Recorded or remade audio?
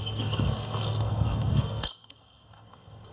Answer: remade